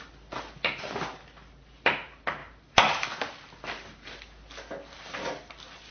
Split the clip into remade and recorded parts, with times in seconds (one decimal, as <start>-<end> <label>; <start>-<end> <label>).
0.0-5.9 recorded